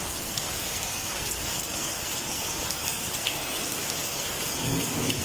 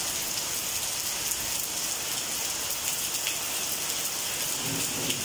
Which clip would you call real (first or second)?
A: second